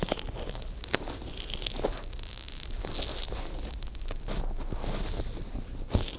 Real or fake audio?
real